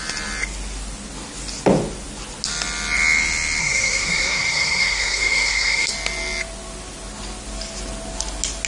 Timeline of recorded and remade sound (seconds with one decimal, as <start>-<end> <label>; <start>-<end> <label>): 0.0-3.6 recorded; 3.6-5.9 remade; 5.9-8.7 recorded